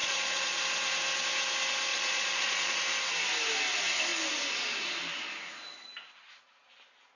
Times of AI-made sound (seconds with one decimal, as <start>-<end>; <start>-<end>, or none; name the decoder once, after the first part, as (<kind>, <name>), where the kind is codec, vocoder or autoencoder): 0.0-0.6 (vocoder, Vocos); 1.9-2.8